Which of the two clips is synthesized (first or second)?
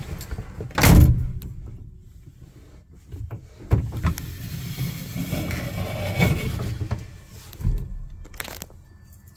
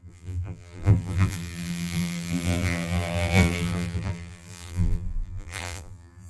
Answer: second